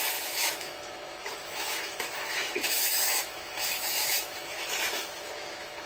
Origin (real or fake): fake